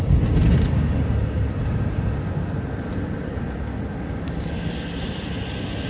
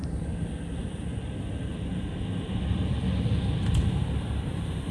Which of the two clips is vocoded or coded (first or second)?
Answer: second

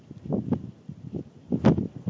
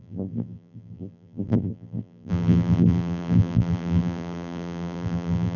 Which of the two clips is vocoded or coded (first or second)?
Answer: second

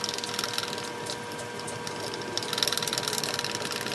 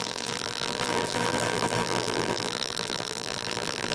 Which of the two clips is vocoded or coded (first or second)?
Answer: second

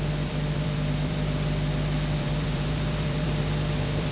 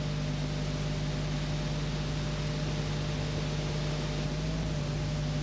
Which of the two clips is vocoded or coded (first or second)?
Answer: first